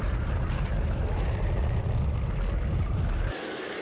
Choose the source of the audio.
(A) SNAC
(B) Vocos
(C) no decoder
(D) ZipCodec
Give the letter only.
C